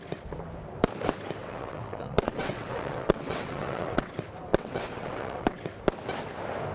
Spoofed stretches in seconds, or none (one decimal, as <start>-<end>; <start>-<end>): 1.4-4.1; 4.5-5.6

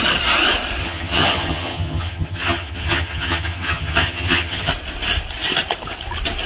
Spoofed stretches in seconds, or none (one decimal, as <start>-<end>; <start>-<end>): 0.8-4.7

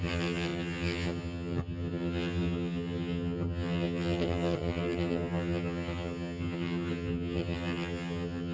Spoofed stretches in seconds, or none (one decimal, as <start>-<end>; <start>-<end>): 0.0-8.5

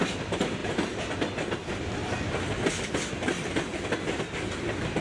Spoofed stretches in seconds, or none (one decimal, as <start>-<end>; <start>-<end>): none

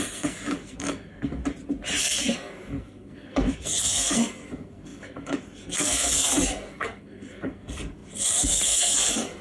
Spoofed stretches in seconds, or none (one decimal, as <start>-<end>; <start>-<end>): 0.0-1.4; 2.0-9.4

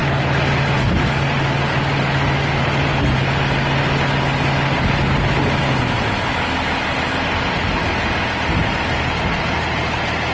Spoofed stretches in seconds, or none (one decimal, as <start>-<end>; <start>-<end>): none

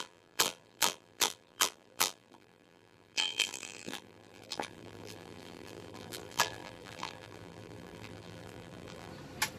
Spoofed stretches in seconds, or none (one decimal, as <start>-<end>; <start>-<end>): 0.0-9.1

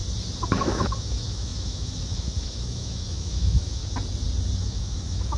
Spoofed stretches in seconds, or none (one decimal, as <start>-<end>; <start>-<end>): 0.6-3.8; 4.6-5.4